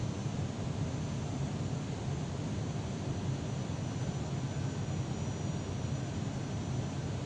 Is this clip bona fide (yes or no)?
yes